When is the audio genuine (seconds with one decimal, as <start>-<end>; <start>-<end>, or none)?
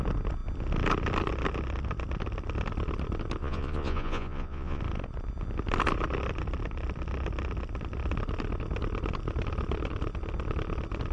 0.0-3.4; 4.8-11.1